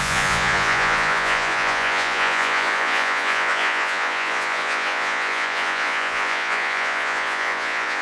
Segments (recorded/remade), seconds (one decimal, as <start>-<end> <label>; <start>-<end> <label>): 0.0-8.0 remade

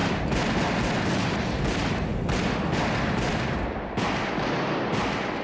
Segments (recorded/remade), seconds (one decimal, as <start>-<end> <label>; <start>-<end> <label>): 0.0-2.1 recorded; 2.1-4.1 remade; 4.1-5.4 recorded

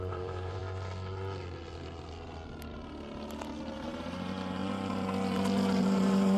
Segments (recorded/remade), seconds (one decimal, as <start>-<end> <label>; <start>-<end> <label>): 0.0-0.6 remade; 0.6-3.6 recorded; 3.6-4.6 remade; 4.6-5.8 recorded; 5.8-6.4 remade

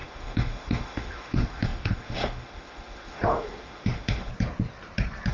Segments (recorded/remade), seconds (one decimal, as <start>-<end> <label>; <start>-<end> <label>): 0.0-4.3 remade; 4.3-5.3 recorded

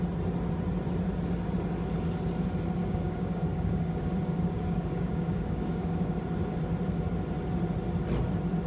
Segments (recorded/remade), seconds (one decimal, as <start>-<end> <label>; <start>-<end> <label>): 0.0-2.8 recorded; 2.8-6.1 remade; 6.1-8.7 recorded

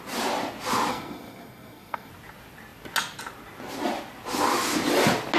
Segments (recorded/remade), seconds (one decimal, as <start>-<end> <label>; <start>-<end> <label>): 0.0-0.9 recorded; 0.9-2.1 remade; 2.1-5.4 recorded